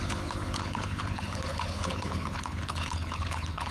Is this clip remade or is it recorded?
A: remade